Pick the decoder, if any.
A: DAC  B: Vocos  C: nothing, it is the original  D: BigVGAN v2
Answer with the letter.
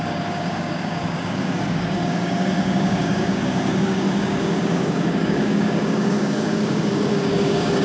A